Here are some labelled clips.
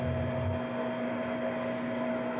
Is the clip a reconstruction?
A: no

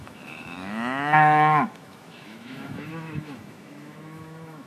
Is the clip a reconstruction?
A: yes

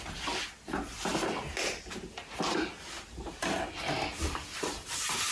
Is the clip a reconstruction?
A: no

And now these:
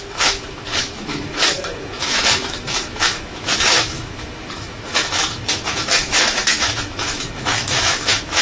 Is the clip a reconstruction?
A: yes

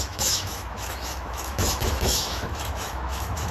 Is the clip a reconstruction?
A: yes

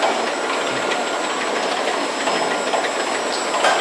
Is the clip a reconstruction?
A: no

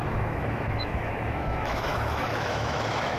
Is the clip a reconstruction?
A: yes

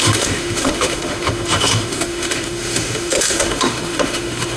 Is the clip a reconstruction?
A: yes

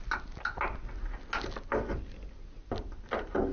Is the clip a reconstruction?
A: no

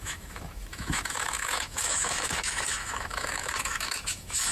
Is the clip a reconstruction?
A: yes